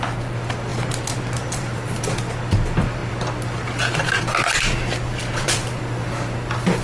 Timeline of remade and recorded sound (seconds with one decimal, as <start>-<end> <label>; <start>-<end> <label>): 0.0-0.7 recorded; 0.7-2.0 remade; 2.0-5.2 recorded; 5.2-5.8 remade; 5.8-6.8 recorded